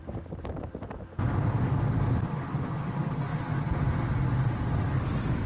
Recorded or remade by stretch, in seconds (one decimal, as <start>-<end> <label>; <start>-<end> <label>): 0.0-0.6 remade; 0.6-5.5 recorded